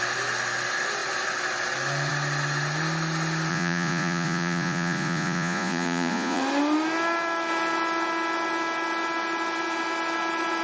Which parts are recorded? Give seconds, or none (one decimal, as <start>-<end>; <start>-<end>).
0.0-3.5; 6.4-10.6